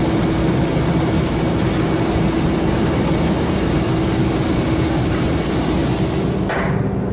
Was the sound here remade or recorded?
recorded